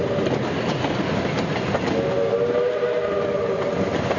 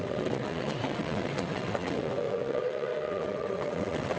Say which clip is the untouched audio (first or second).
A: first